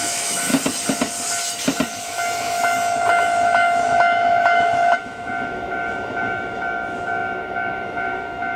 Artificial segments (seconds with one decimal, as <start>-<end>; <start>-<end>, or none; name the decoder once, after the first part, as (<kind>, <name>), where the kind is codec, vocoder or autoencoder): 0.0-0.5 (autoencoder, DAC-VAE); 2.0-8.6